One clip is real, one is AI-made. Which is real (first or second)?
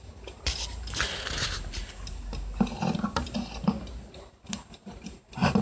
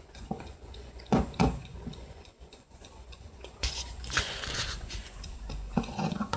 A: first